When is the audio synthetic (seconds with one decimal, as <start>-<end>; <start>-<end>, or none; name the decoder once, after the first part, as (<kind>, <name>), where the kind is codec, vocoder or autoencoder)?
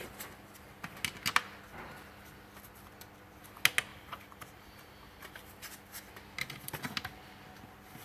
3.9-5.5 (vocoder, BigVGAN v2)